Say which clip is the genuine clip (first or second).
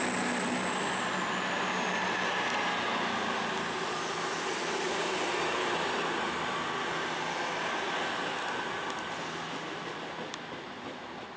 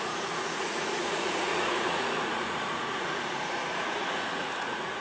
first